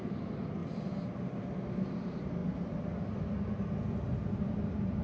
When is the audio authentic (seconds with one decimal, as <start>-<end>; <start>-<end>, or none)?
2.4-4.4